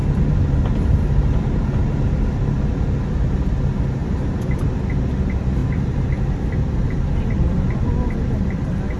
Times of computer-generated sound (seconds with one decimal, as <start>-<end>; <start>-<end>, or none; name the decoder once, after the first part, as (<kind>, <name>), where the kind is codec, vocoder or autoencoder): 0.0-0.5 (vocoder, BigVGAN v2); 4.0-4.8; 5.6-9.0